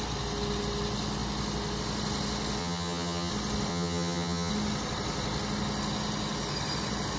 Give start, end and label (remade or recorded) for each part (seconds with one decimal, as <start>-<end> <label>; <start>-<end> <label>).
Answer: 0.0-2.6 recorded; 2.6-3.3 remade; 3.3-3.7 recorded; 3.7-4.5 remade; 4.5-7.2 recorded